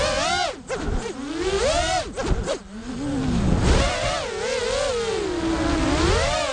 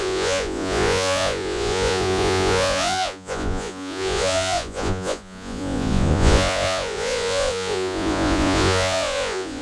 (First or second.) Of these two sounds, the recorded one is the first